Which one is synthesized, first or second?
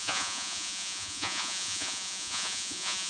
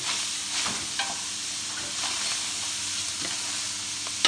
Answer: first